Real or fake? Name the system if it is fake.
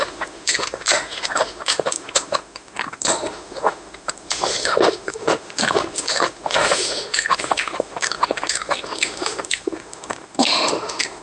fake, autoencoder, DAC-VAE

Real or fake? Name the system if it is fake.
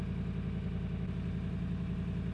real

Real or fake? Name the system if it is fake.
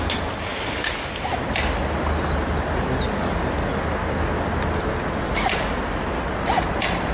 real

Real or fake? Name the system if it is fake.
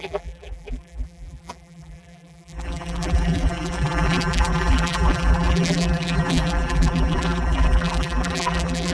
fake, vocoder, BigVGAN v2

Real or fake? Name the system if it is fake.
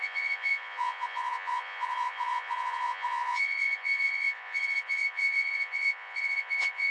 fake, vocoder, Vocos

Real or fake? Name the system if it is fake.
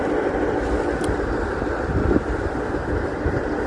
real